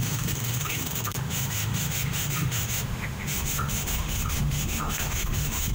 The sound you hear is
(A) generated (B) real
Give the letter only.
A